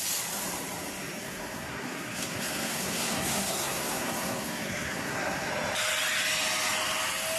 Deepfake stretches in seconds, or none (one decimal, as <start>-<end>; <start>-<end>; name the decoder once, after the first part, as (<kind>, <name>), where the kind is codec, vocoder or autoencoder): 1.2-5.5 (codec, SNAC)